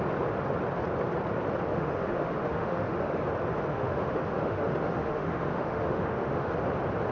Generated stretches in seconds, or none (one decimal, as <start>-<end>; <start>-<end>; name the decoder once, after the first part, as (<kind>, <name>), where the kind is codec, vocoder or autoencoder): 1.7-3.2 (autoencoder, DAC-VAE); 3.7-6.5